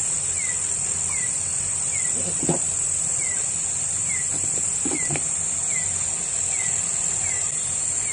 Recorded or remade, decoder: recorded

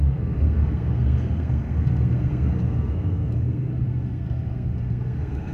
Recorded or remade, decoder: remade, codec, SNAC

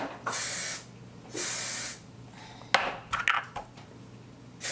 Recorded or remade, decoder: recorded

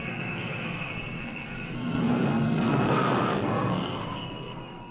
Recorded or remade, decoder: remade, codec, SNAC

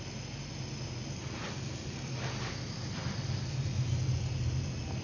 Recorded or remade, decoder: recorded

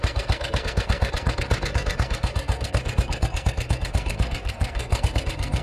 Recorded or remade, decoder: remade, codec, SNAC